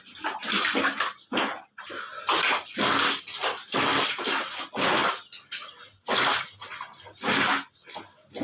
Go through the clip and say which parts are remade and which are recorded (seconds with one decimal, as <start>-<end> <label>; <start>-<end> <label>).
0.0-8.4 recorded